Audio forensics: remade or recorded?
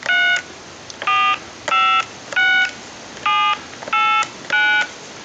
recorded